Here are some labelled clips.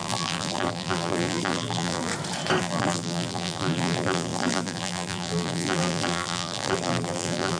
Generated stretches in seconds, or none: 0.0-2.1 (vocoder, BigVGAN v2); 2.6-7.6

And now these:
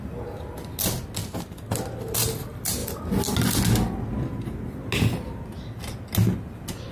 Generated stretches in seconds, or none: none

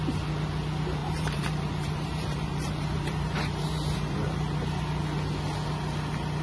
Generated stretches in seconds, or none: 1.0-4.8 (vocoder, BigVGAN v2)

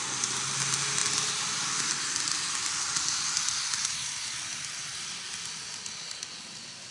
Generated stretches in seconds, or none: none